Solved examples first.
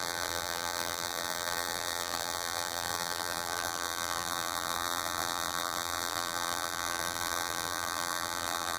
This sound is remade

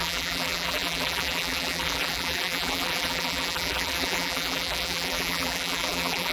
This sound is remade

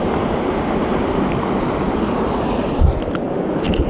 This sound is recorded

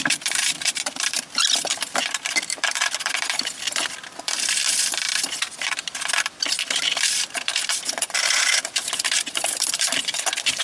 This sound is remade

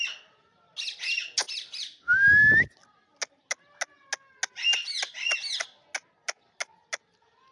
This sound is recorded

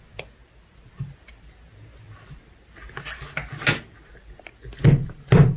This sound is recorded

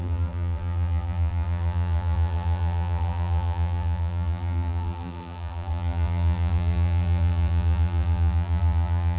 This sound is remade